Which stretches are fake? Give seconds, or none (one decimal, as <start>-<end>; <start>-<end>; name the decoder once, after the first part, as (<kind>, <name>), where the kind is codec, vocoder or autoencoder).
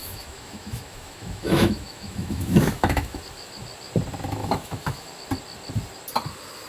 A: 0.0-3.2 (autoencoder, DAC-VAE); 4.4-5.1